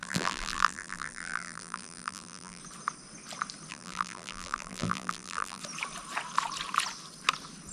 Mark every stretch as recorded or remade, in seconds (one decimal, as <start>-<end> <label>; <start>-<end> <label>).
0.0-2.6 remade; 2.6-3.7 recorded; 3.7-5.6 remade; 5.6-7.7 recorded